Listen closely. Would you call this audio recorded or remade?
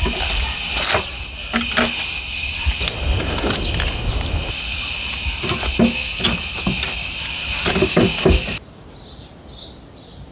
recorded